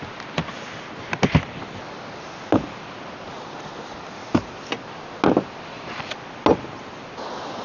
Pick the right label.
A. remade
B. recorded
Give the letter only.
B